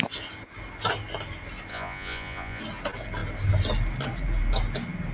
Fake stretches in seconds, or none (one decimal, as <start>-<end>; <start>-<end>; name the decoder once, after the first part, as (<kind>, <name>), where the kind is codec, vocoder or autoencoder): 1.7-2.6 (vocoder, Vocos)